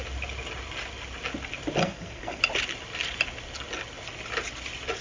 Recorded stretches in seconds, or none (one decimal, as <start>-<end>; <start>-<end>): 0.0-1.8; 2.4-5.0